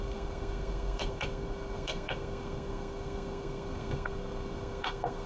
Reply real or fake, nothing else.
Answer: fake